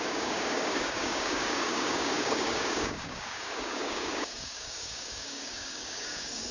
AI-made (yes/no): yes